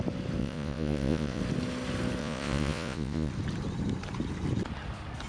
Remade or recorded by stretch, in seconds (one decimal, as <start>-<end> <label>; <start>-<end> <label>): 0.0-0.4 recorded; 0.4-1.4 remade; 1.4-2.2 recorded; 2.2-3.3 remade; 3.3-5.3 recorded